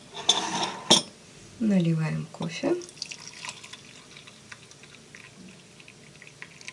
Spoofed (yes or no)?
no